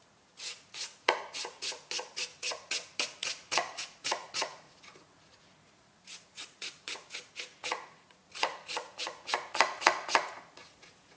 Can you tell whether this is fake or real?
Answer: fake